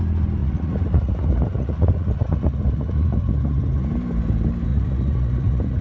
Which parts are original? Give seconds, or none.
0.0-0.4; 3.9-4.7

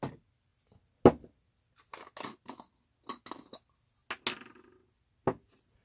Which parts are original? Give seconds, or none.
0.0-5.8

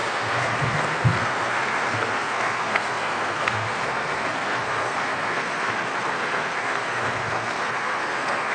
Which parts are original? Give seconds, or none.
none

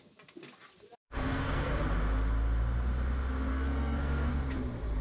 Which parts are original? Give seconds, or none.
0.0-1.0; 1.7-3.5; 4.3-5.0

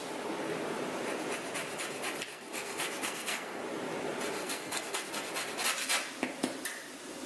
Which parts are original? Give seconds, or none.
0.0-2.3; 3.6-4.4; 5.1-7.3

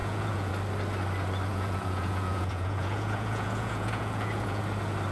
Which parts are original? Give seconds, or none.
0.5-1.5; 4.6-5.1